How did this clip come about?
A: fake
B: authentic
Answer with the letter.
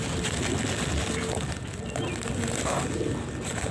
B